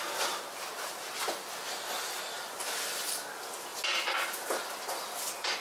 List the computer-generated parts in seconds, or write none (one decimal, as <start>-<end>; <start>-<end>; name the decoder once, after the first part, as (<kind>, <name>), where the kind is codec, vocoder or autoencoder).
none